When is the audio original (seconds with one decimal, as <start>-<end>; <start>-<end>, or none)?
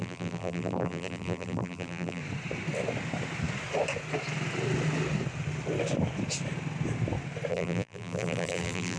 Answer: 2.2-7.5